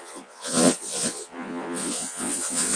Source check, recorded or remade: remade